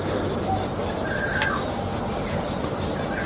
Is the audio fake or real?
real